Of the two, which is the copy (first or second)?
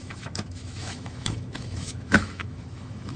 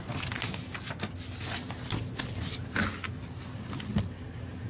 first